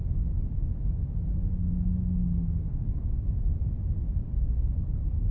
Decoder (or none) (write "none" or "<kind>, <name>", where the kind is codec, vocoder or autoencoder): none